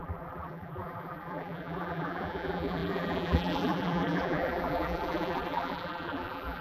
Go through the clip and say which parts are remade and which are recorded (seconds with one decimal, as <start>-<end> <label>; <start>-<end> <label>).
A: 0.0-6.6 remade

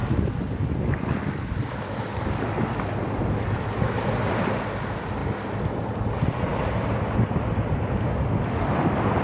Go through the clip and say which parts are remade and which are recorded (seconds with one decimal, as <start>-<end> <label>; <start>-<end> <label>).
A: 0.0-9.2 recorded